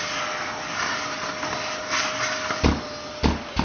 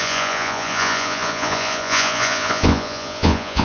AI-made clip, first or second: second